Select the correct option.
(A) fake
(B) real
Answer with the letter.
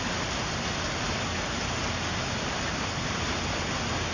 B